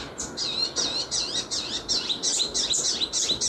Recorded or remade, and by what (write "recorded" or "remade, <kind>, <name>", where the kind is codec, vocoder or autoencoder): recorded